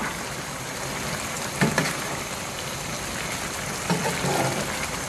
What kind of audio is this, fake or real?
real